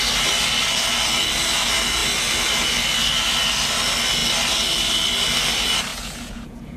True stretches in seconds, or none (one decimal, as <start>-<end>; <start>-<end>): 0.0-5.9